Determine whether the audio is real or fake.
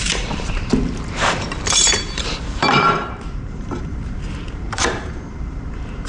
fake